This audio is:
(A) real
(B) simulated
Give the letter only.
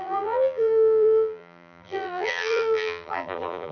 B